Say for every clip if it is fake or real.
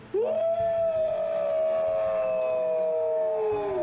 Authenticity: real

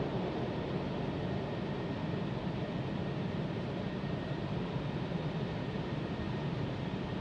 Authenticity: fake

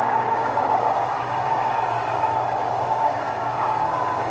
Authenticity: fake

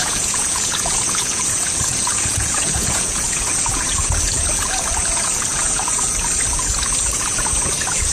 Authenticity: fake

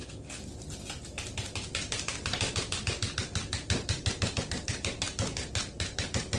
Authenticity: real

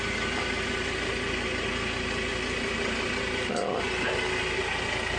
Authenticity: real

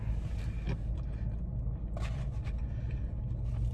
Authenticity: real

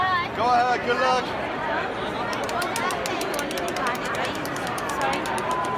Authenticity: real